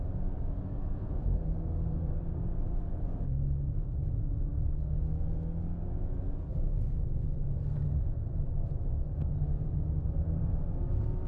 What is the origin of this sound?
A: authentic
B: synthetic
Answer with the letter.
A